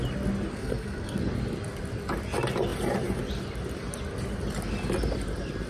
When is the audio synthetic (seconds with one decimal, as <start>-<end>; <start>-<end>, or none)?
0.5-1.2